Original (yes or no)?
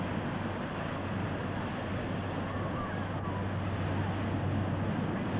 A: yes